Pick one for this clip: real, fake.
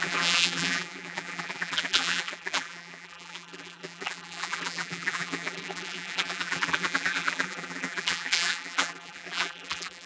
fake